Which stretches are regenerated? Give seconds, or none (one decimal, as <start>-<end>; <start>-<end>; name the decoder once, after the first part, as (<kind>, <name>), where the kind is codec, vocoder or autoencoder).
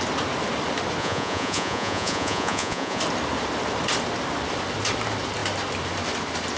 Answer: 1.0-3.0 (vocoder, Vocos)